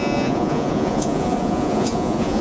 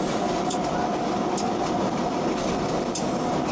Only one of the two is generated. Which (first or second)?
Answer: first